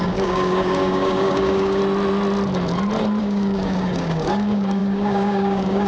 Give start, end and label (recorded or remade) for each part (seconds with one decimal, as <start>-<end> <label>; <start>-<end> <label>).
0.0-1.8 remade; 1.8-3.2 recorded; 3.2-5.9 remade